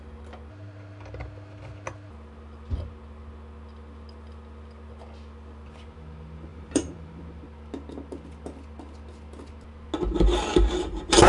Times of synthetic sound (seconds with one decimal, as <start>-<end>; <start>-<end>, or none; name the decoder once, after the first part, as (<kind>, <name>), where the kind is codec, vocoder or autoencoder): 6.5-7.2 (vocoder, BigVGAN v2); 10.5-11.3